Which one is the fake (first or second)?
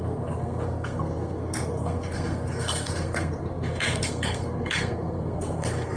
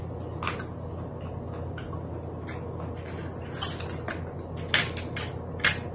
first